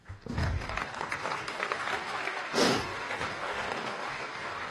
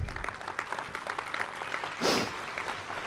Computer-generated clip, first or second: first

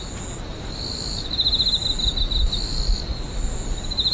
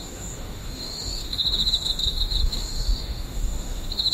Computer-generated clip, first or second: second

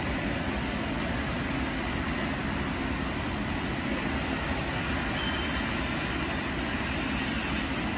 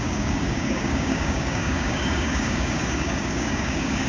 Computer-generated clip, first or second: second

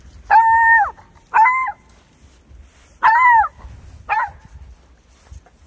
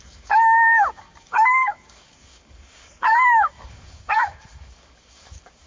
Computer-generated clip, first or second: second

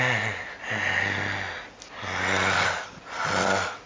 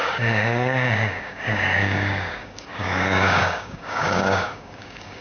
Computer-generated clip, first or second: second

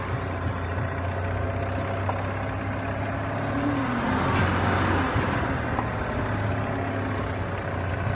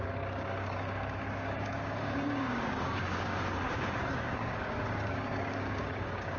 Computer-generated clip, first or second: second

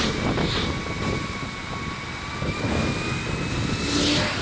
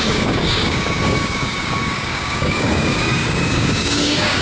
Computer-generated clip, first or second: second